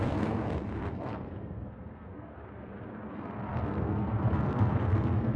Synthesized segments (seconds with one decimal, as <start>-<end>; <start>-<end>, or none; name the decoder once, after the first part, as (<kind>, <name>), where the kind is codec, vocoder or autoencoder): 0.0-2.3 (codec, SNAC); 3.1-5.4